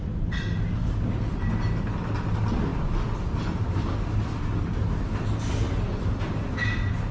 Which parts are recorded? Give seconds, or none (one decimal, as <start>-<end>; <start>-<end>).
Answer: 0.0-7.1